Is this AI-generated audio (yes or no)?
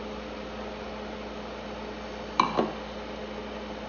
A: no